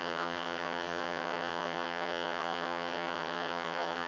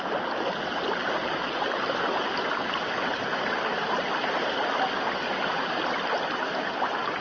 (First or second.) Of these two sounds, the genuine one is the second